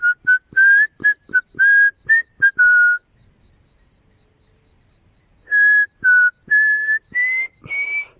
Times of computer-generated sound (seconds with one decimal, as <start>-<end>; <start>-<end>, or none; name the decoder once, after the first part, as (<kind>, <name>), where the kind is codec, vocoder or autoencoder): none